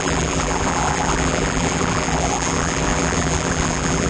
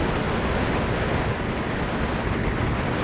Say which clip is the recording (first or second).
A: second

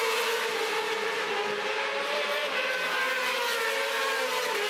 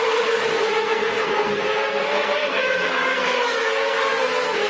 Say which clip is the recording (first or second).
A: first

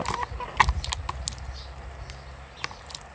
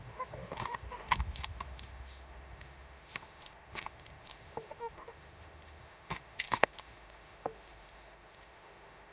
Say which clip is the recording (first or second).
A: first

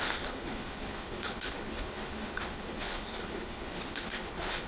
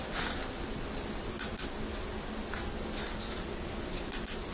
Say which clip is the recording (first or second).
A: second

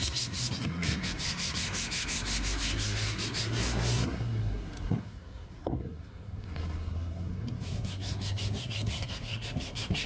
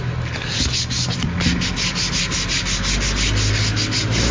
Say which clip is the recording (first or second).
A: second